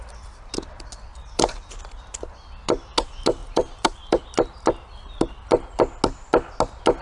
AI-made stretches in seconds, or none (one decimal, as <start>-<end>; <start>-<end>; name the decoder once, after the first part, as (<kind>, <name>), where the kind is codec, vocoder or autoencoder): 1.1-1.8 (vocoder, BigVGAN v2); 3.4-4.2